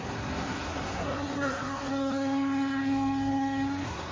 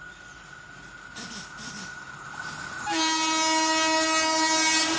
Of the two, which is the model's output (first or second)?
first